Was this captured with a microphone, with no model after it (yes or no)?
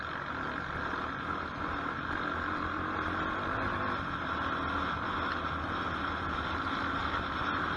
yes